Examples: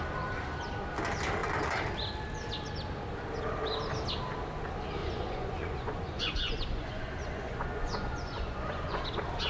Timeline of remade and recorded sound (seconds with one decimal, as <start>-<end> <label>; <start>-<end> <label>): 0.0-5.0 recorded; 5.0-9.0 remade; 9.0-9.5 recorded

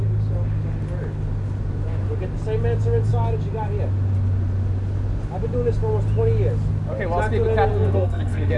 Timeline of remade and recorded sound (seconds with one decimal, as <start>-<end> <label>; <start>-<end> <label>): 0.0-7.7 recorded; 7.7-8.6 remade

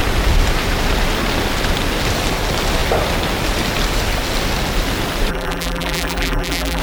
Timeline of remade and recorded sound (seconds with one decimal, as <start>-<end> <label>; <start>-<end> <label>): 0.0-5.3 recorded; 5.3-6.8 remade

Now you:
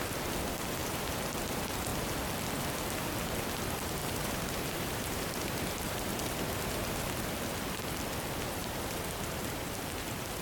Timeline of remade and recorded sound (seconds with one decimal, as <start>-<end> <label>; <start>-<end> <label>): 0.0-0.8 recorded; 0.8-1.3 remade; 1.3-4.0 recorded; 4.0-7.1 remade; 7.1-8.6 recorded; 8.6-10.4 remade

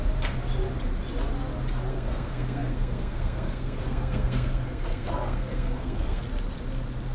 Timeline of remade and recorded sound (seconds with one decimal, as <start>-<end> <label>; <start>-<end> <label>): 0.0-1.9 recorded; 1.9-6.2 remade; 6.2-7.1 recorded

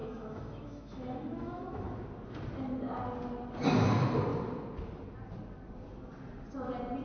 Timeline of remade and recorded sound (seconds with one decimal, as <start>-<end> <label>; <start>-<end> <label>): 0.0-1.9 remade; 1.9-7.0 recorded

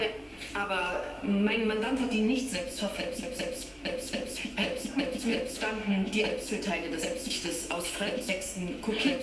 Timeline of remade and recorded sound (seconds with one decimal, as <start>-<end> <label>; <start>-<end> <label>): 0.0-0.5 recorded; 0.5-9.2 remade

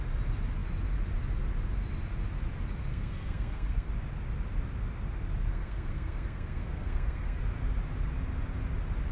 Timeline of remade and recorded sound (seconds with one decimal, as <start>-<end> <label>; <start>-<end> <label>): 0.0-2.9 recorded; 2.9-3.9 remade; 3.9-5.5 recorded; 5.5-7.4 remade; 7.4-9.1 recorded